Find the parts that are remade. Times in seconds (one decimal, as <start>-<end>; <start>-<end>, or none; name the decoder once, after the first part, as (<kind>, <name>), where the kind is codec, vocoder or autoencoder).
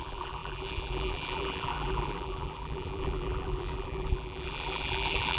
0.0-5.4 (vocoder, BigVGAN v2)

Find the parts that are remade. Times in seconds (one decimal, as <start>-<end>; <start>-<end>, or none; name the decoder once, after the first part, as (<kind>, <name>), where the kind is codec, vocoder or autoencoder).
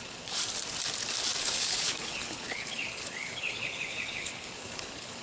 0.0-0.4 (codec, HILCodec); 1.4-5.2